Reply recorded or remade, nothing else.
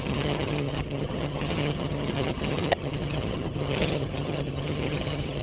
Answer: remade